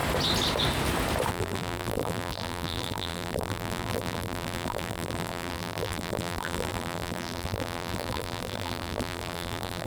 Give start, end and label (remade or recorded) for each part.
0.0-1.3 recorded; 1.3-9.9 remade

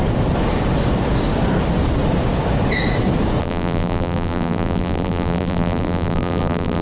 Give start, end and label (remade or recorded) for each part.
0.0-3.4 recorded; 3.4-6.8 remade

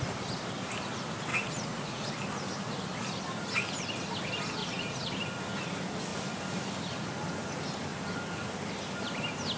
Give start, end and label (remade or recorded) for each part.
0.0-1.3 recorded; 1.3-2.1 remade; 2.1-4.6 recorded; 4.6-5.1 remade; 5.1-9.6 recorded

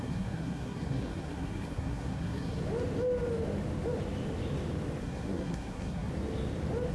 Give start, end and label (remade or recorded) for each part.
0.0-2.6 remade; 2.6-5.0 recorded; 5.0-6.1 remade; 6.1-6.9 recorded

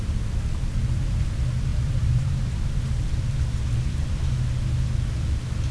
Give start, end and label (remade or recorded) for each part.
0.0-1.7 recorded; 1.7-4.3 remade; 4.3-5.7 recorded

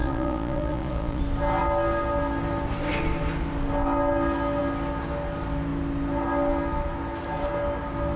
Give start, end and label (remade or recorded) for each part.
0.0-1.2 remade; 1.2-8.2 recorded

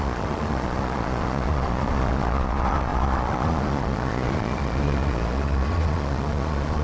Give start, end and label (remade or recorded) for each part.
0.0-6.8 remade

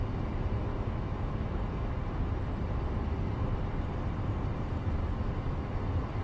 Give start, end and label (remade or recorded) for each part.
0.0-0.7 recorded; 0.7-2.0 remade; 2.0-5.0 recorded; 5.0-5.8 remade; 5.8-6.2 recorded